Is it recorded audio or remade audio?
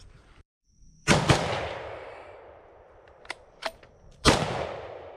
remade